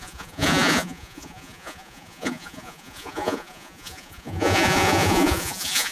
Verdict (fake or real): fake